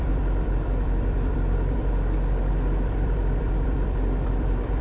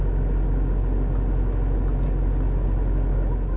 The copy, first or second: first